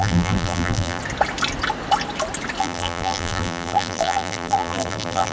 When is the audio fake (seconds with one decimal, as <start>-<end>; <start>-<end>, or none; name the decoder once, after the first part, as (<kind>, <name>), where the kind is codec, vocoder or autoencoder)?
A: 0.0-1.0 (vocoder, BigVGAN v2); 2.6-5.3